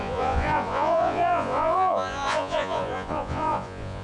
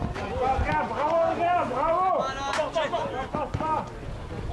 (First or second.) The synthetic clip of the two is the first